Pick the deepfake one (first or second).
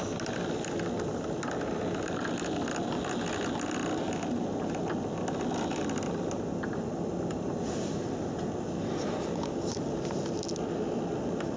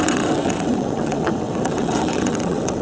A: second